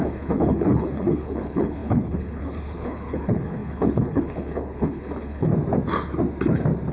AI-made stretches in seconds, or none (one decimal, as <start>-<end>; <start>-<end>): 0.0-5.5